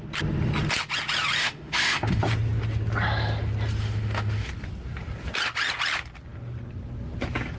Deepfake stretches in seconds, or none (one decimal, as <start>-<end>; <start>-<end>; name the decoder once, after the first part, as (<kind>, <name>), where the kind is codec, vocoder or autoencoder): 1.4-2.2 (autoencoder, DAC-VAE); 3.8-4.5